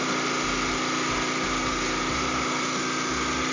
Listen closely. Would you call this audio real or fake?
real